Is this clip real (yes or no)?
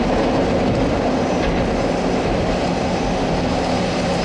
yes